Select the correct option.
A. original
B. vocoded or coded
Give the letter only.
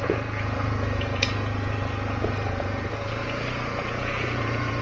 B